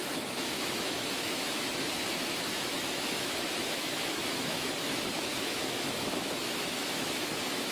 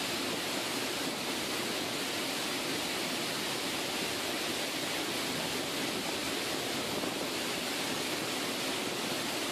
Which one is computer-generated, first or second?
first